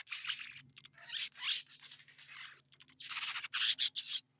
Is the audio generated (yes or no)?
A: no